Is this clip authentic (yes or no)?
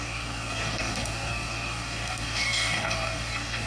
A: no